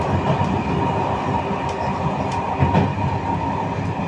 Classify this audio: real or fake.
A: real